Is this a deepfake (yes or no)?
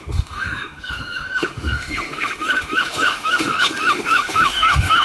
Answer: yes